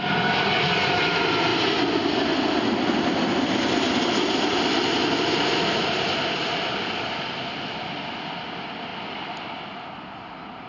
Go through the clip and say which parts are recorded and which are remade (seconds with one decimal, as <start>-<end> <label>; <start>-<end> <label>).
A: 0.0-10.7 recorded